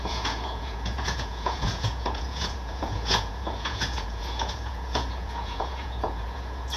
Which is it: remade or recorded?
remade